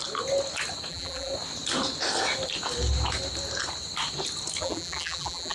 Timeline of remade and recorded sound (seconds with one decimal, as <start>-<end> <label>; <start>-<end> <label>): 0.0-0.9 recorded; 0.9-1.3 remade; 1.3-4.6 recorded; 4.6-5.5 remade